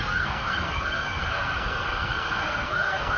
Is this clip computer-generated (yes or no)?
yes